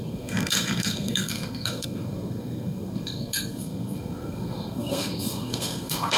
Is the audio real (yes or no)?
no